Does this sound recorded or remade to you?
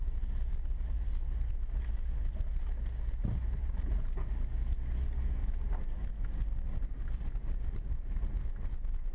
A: recorded